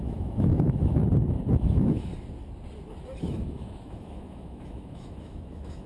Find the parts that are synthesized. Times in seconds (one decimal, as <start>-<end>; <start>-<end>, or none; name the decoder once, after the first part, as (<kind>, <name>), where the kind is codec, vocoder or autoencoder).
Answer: 0.0-1.0 (autoencoder, DAC-VAE); 1.5-2.1; 3.2-5.9

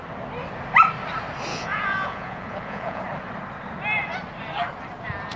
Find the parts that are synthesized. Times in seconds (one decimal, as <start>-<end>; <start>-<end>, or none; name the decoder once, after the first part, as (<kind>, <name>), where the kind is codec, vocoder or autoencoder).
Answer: 1.5-3.0 (vocoder, Vocos)

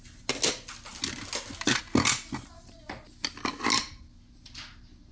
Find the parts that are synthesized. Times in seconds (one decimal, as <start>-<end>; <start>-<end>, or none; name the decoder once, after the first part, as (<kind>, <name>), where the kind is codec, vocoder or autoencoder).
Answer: none

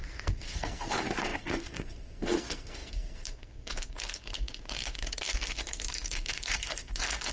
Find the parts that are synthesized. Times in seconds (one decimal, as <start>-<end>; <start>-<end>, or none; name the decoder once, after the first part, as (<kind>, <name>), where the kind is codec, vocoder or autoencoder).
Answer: 0.0-7.3 (codec, SNAC)

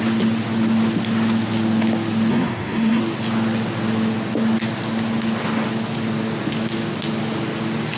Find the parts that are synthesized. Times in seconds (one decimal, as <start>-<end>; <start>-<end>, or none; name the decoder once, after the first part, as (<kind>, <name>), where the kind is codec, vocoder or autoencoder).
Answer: 2.3-3.0 (codec, SNAC)